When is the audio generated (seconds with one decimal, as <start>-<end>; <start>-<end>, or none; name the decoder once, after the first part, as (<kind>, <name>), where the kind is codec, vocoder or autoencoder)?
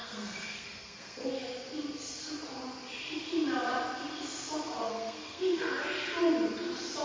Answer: 0.0-1.3 (codec, SNAC); 4.8-5.6